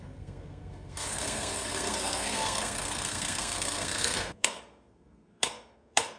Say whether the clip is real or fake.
fake